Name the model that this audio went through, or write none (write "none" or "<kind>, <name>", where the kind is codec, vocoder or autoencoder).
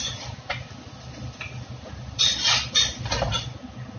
none